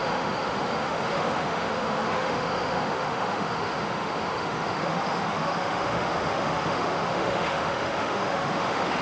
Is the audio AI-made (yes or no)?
yes